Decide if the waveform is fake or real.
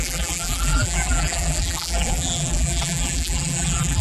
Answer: fake